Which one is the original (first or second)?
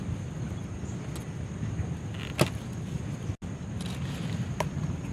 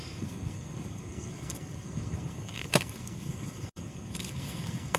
first